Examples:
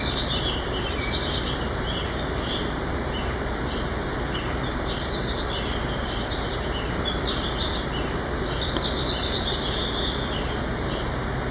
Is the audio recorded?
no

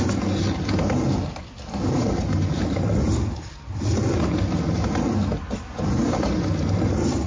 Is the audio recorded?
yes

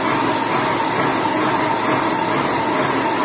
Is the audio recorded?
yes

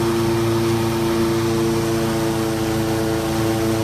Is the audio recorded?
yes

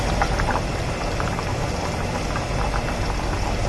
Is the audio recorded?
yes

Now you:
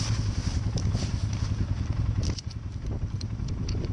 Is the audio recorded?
yes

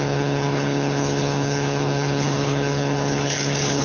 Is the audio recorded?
no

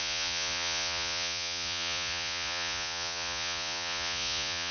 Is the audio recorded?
no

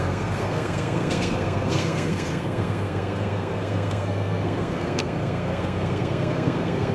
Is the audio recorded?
no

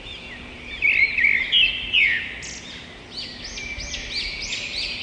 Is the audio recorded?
yes